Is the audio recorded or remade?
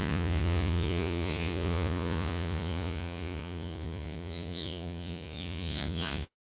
remade